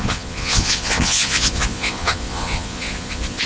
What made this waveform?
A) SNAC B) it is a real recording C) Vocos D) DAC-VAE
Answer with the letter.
C